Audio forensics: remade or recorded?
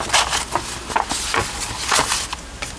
recorded